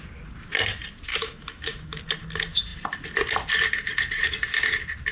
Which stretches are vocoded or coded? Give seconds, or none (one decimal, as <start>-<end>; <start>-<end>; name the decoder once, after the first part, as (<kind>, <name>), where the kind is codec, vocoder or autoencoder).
1.1-2.0 (autoencoder, DAC-VAE)